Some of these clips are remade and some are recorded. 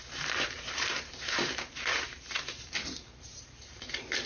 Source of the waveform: remade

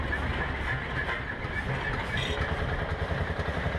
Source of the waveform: recorded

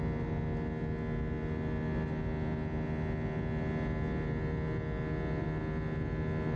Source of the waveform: recorded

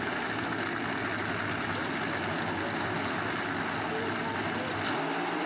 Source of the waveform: recorded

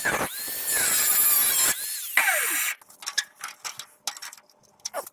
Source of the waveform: recorded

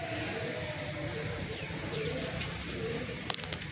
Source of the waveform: remade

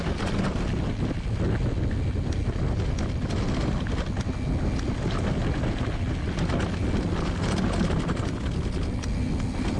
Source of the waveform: recorded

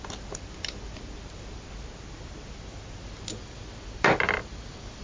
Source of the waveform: recorded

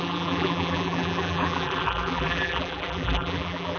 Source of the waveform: remade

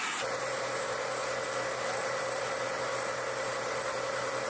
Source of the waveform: recorded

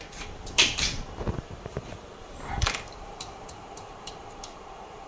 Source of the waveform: remade